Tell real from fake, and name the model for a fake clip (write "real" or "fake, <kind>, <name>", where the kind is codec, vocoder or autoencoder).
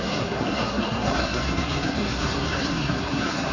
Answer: fake, codec, SNAC